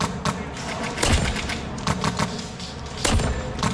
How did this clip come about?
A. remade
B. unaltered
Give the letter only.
B